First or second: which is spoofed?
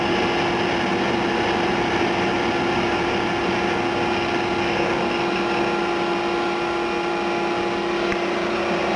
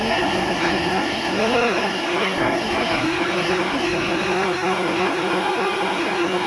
second